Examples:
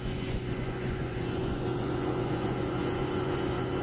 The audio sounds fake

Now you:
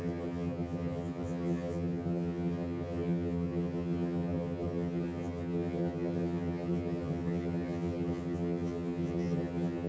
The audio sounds fake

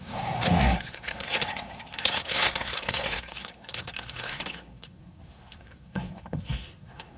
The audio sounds fake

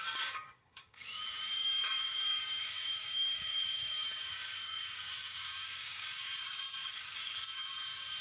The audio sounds fake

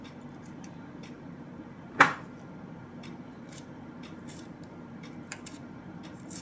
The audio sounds fake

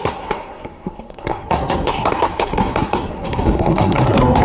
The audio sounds fake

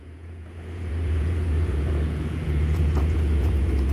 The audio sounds fake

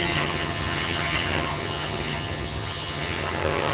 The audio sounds fake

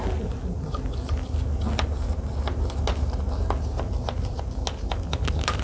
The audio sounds real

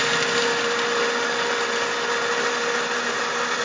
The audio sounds real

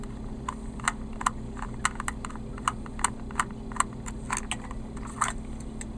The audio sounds real